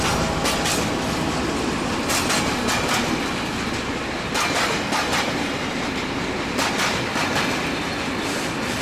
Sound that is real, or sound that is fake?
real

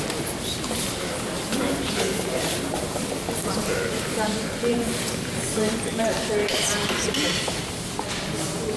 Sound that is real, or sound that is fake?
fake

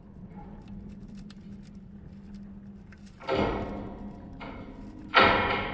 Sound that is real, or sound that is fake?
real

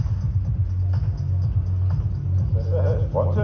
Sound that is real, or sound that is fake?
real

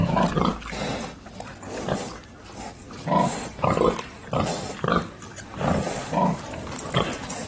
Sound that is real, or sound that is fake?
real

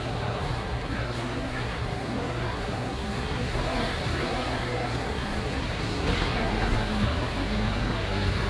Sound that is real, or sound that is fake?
fake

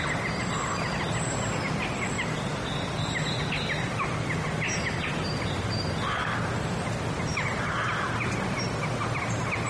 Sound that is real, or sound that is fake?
real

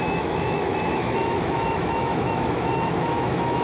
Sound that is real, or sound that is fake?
fake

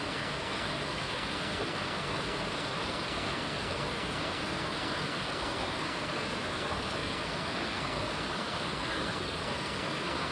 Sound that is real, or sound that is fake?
fake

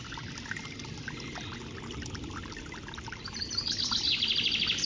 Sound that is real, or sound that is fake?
real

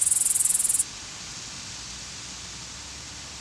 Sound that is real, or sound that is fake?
real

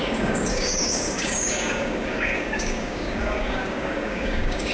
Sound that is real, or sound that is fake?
fake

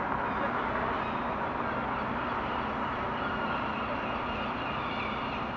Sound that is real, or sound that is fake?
real